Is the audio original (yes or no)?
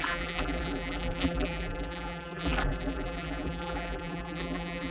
no